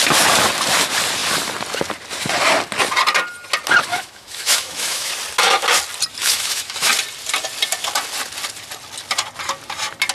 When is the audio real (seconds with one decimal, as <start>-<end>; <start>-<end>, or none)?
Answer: 0.0-3.9; 5.1-6.2; 6.9-10.1